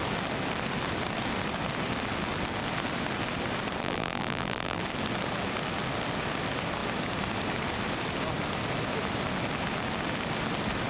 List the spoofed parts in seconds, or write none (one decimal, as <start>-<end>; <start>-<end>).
3.8-4.8